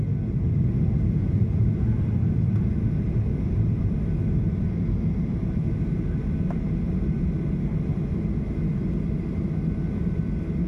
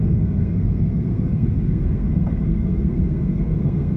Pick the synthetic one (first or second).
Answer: second